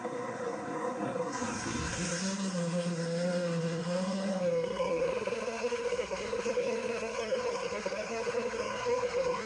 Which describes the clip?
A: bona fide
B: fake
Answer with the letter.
B